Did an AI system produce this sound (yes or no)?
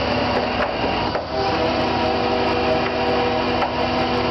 no